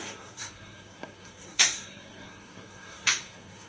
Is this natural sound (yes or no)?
no